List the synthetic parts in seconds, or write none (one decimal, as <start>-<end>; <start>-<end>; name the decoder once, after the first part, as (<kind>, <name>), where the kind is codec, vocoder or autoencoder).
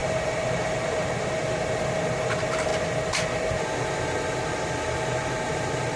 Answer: 0.0-1.3 (vocoder, BigVGAN v2)